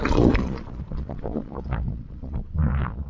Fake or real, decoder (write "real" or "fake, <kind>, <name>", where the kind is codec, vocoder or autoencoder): fake, vocoder, Vocos